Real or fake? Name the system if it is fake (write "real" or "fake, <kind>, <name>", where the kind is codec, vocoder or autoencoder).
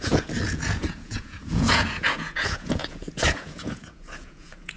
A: fake, vocoder, Vocos